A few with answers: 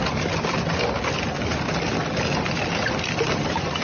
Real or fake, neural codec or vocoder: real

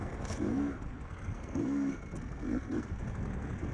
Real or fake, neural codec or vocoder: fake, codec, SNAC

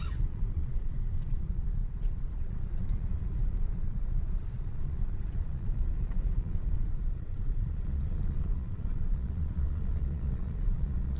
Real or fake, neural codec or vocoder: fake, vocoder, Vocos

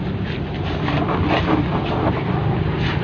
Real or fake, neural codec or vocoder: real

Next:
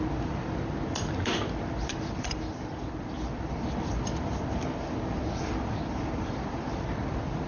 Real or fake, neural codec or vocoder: fake, vocoder, BigVGAN v2